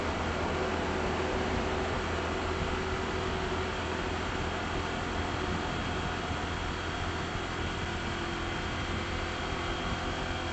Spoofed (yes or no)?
no